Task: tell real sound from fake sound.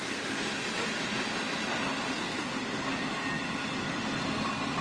real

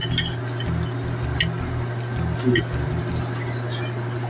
real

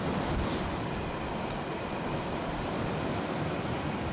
real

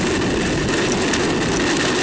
real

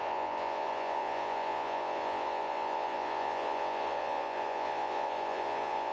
fake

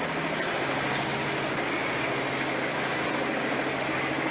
real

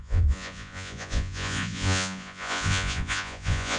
fake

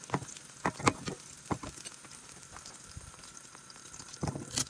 real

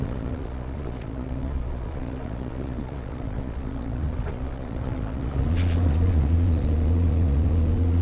fake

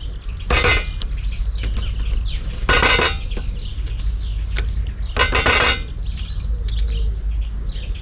real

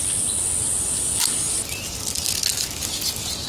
real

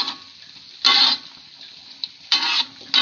real